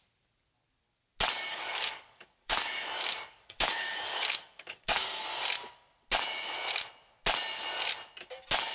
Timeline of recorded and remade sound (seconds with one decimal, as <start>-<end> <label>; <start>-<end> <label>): 0.0-1.5 recorded; 1.5-5.2 remade; 5.2-8.7 recorded